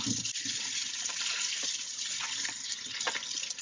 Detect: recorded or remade recorded